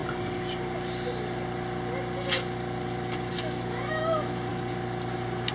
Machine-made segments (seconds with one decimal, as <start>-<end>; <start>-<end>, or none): 3.3-4.5